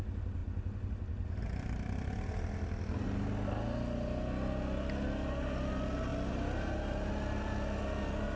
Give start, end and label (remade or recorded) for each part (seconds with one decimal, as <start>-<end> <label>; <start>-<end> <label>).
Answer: 0.0-8.4 recorded